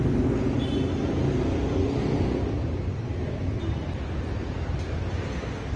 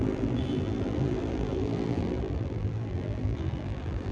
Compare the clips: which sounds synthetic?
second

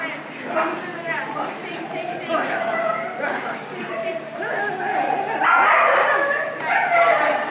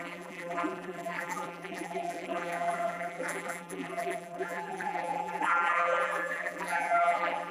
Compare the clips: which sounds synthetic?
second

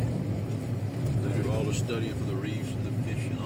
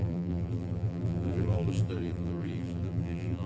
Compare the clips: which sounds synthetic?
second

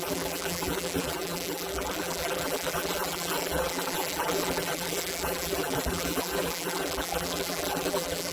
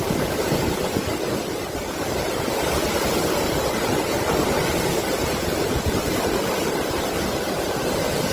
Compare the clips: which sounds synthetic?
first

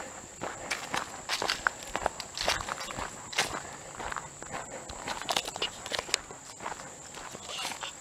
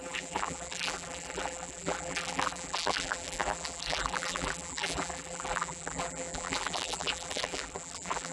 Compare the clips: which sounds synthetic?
second